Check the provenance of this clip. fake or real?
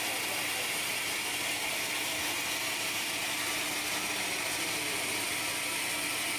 real